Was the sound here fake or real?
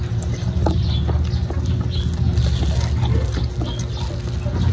real